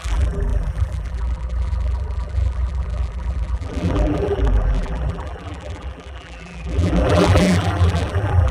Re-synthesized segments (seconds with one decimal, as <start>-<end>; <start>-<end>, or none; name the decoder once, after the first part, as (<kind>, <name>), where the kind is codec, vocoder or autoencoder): 0.0-8.5 (vocoder, BigVGAN v2)